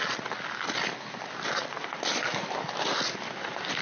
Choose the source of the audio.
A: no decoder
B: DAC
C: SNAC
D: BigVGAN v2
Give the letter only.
A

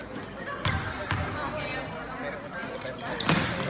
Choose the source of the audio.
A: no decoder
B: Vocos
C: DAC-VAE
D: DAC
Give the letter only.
A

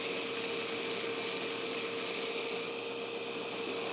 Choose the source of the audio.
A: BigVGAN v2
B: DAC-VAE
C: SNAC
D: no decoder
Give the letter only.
D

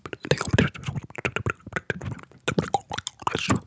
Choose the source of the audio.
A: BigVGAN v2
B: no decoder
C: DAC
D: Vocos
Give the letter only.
B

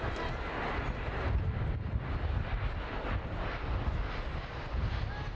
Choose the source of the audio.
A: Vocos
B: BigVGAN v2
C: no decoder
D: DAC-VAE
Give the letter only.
C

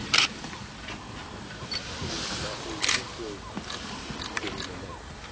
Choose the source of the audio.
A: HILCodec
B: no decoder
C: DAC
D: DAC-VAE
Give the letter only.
B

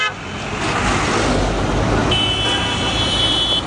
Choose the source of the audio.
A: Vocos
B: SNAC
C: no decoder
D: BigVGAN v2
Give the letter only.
C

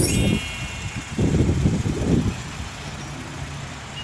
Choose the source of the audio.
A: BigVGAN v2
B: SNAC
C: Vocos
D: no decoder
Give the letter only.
A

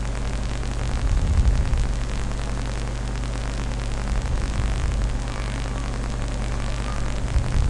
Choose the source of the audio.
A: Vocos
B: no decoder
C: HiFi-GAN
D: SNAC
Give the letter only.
B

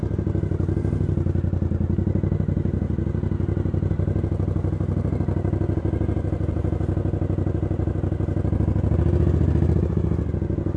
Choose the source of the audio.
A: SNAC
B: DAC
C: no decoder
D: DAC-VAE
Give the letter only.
C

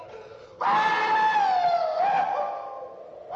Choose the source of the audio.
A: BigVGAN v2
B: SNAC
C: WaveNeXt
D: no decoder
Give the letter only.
D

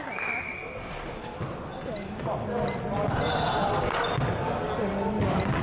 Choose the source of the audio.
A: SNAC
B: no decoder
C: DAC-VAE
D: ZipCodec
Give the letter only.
B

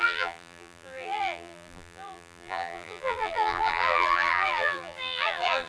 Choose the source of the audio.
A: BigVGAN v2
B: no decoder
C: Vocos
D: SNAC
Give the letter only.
A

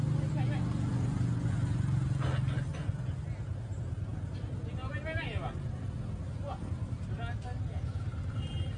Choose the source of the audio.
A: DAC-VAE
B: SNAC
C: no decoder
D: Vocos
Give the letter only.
C